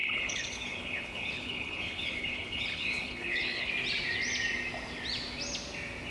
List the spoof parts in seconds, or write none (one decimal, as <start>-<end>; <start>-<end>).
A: 0.0-3.7